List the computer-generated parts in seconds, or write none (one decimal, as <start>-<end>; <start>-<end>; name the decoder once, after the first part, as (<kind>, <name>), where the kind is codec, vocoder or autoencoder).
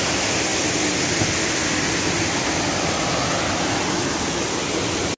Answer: none